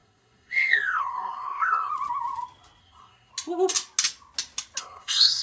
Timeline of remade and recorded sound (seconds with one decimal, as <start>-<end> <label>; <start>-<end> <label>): 0.0-1.9 remade; 1.9-2.8 recorded; 2.8-3.3 remade; 3.3-4.8 recorded; 4.8-5.4 remade